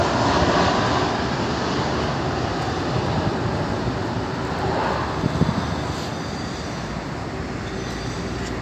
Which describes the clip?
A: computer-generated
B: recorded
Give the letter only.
B